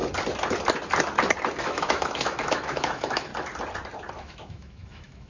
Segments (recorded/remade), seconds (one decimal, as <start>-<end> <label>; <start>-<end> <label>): 0.0-1.6 recorded; 1.6-3.3 remade; 3.3-4.1 recorded; 4.1-5.3 remade

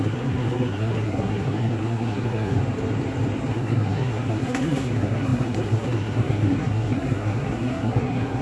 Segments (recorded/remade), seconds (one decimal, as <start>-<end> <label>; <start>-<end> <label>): 0.0-2.6 remade; 2.6-3.5 recorded; 3.5-8.4 remade

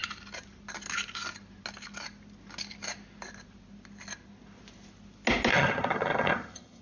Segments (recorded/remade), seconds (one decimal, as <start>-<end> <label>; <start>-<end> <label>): 0.0-5.5 recorded; 5.5-6.8 remade